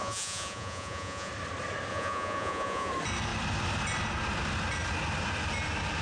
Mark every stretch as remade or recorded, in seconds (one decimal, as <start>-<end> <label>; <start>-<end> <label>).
0.0-1.3 remade; 1.3-1.9 recorded; 1.9-2.9 remade; 2.9-6.0 recorded